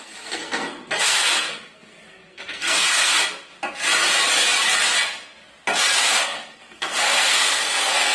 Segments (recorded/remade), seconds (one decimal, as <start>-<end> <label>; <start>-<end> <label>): 0.0-3.1 remade; 3.1-6.1 recorded; 6.1-8.1 remade

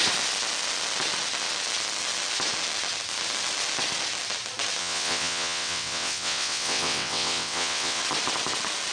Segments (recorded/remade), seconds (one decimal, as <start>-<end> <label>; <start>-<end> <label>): 0.0-4.8 recorded; 4.8-8.0 remade; 8.0-8.9 recorded

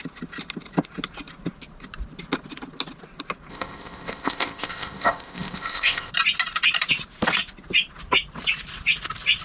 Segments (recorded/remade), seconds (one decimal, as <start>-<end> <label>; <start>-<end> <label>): 0.0-3.5 recorded; 3.5-6.1 remade; 6.1-9.4 recorded

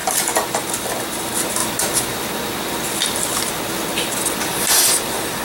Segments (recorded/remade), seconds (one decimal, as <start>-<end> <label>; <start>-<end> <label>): 0.0-5.4 recorded

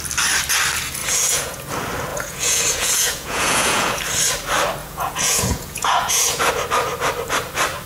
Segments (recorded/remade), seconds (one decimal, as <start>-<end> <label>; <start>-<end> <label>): 0.0-1.0 recorded; 1.0-1.7 remade; 1.7-2.1 recorded; 2.1-4.0 remade; 4.0-4.8 recorded; 4.8-6.5 remade; 6.5-7.9 recorded

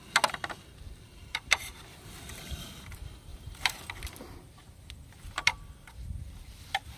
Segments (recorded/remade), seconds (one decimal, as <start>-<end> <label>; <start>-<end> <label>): 0.0-1.2 recorded; 1.2-1.8 remade; 1.8-3.3 recorded; 3.3-3.8 remade; 3.8-7.0 recorded

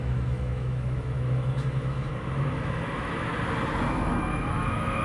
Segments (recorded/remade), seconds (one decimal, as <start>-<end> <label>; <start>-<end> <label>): 0.0-3.3 remade; 3.3-4.3 recorded; 4.3-5.0 remade